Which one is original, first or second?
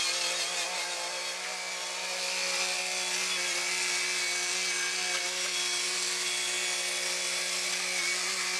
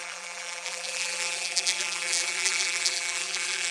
first